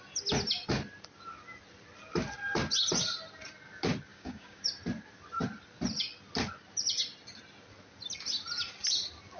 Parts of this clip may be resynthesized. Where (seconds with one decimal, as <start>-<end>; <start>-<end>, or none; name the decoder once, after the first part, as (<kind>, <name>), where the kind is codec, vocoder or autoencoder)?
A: 4.1-4.7 (codec, DAC)